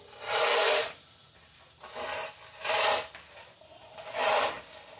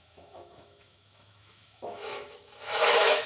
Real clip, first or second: first